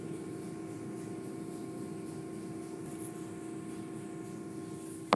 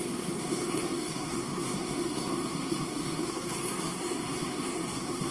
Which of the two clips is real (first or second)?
first